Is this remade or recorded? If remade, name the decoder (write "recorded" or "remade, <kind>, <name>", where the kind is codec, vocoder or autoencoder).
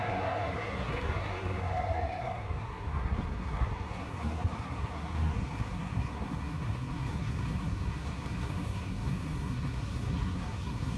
remade, codec, SNAC